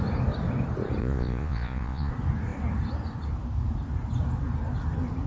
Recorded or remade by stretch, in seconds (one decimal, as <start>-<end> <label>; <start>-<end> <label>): 0.0-1.0 recorded; 1.0-2.1 remade; 2.1-5.3 recorded

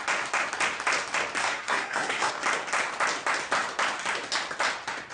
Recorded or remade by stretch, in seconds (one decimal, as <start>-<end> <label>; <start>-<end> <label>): 0.0-1.4 recorded; 1.4-2.3 remade; 2.3-5.1 recorded

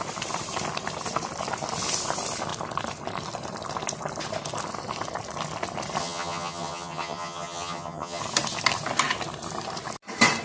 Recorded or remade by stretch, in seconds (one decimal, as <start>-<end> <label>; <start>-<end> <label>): 0.0-6.0 recorded; 6.0-8.2 remade; 8.2-10.4 recorded

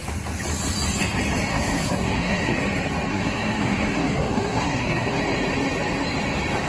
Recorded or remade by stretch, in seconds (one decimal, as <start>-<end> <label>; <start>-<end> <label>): 0.0-1.5 recorded; 1.5-2.6 remade; 2.6-3.1 recorded; 3.1-5.2 remade; 5.2-6.7 recorded

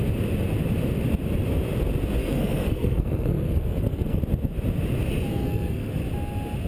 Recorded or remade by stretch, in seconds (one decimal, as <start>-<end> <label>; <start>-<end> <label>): 0.0-2.2 recorded; 2.2-4.2 remade; 4.2-5.3 recorded; 5.3-5.9 remade; 5.9-6.7 recorded

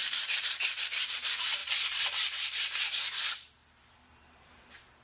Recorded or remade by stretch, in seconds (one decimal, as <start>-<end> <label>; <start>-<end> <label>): 0.0-1.1 remade; 1.1-1.6 recorded; 1.6-4.6 remade; 4.6-5.0 recorded

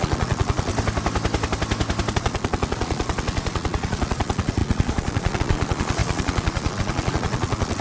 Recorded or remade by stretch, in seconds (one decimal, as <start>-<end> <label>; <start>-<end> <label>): 0.0-0.7 remade; 0.7-2.1 recorded; 2.1-7.8 remade